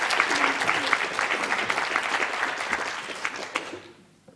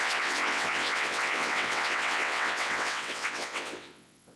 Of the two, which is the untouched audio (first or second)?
first